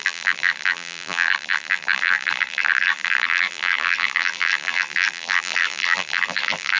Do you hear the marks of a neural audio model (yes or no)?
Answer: yes